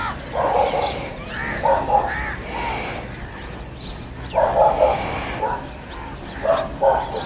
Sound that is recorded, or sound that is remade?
recorded